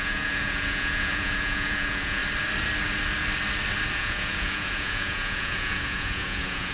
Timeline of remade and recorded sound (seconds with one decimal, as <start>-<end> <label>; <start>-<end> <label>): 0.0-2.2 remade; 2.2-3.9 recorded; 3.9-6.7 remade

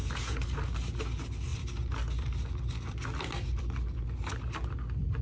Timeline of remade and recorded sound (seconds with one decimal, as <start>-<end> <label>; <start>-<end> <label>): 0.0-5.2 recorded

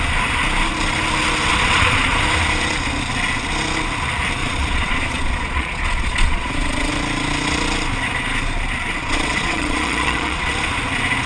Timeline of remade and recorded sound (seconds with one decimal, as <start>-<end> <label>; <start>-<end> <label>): 0.0-1.5 recorded; 1.5-2.2 remade; 2.2-4.4 recorded; 4.4-6.9 remade; 6.9-9.0 recorded; 9.0-10.5 remade; 10.5-11.3 recorded

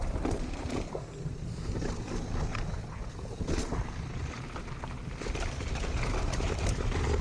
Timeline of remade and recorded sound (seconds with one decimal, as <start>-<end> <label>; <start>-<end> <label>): 0.0-3.0 recorded; 3.0-3.5 remade; 3.5-7.2 recorded